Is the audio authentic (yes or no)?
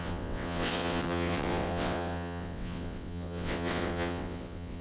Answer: no